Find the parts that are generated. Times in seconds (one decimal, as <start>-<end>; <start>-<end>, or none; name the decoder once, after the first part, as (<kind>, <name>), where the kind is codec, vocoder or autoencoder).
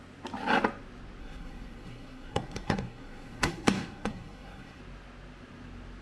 1.2-4.8 (codec, SNAC)